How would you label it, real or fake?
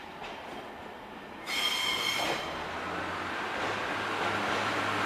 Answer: real